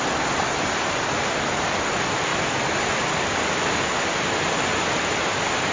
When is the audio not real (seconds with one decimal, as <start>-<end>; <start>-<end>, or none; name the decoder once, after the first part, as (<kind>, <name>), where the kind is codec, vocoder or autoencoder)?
none